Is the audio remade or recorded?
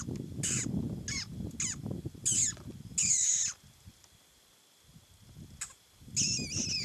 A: recorded